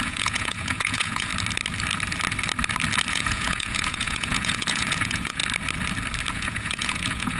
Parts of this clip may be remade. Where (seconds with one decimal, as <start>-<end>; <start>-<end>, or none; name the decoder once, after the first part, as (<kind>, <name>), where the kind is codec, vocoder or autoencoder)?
0.0-1.3 (vocoder, Vocos); 3.1-5.4; 6.3-7.4